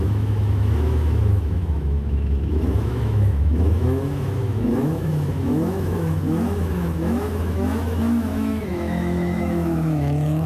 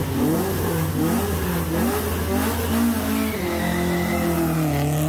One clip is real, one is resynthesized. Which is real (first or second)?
second